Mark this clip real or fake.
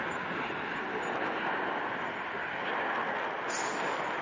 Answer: real